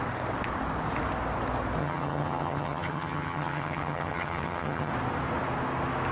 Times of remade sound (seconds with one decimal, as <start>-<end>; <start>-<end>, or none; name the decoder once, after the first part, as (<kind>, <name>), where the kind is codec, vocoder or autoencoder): 1.8-4.9 (vocoder, HiFi-GAN)